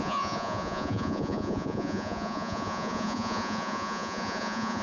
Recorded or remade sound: remade